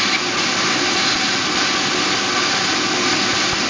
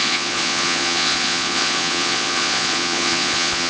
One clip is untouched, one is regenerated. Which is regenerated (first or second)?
second